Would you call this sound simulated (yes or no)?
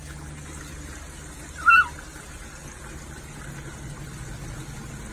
no